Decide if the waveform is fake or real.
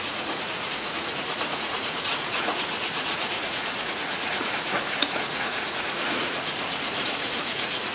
fake